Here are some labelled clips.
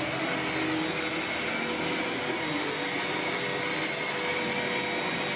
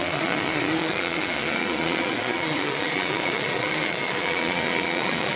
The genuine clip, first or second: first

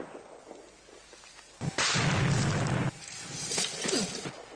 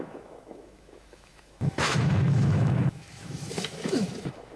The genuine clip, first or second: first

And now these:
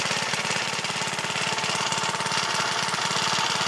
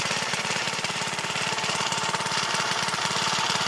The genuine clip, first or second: first